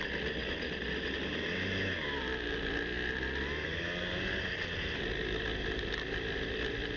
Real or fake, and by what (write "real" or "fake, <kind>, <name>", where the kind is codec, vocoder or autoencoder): real